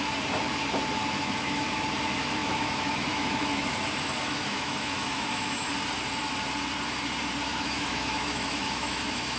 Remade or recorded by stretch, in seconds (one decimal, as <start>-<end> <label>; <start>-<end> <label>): 0.0-1.0 recorded; 1.0-1.8 remade; 1.8-2.4 recorded; 2.4-5.7 remade; 5.7-7.5 recorded; 7.5-9.4 remade